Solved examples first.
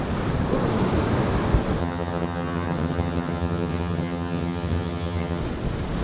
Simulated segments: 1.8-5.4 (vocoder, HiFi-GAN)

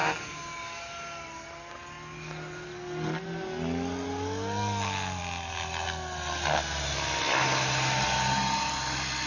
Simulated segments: none